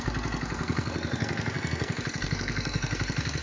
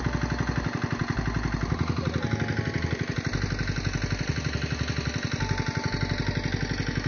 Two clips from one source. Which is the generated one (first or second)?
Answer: first